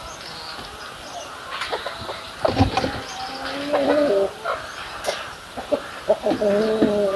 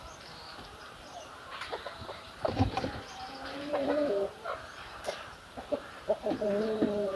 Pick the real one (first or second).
first